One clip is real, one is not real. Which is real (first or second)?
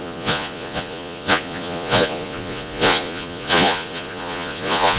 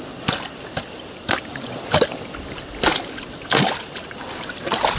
second